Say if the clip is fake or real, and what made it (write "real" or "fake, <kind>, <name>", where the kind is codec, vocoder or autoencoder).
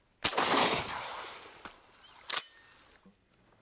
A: real